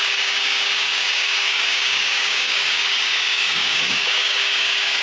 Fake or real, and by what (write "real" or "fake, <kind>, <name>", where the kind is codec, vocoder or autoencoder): fake, codec, DAC